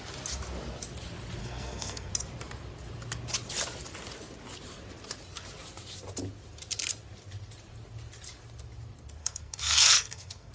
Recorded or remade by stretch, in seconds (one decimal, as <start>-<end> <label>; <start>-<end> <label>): 0.0-1.4 recorded; 1.4-2.1 remade; 2.1-9.2 recorded; 9.2-10.5 remade